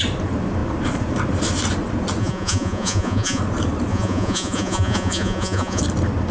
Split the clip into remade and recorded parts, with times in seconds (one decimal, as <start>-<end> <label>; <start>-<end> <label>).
0.0-2.2 recorded; 2.2-3.4 remade; 3.4-3.9 recorded; 3.9-5.8 remade; 5.8-6.3 recorded